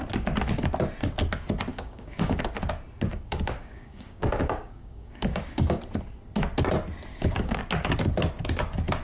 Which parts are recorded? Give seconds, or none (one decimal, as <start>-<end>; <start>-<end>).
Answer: 0.0-1.7; 2.4-3.1; 5.8-7.1; 7.6-9.0